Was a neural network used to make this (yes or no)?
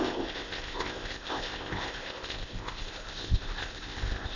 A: yes